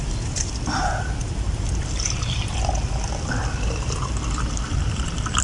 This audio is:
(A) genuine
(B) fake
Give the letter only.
A